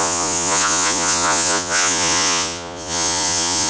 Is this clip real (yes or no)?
no